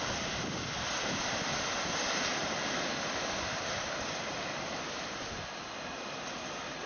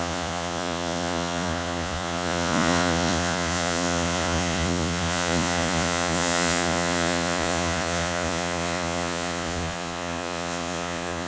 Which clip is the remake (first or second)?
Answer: second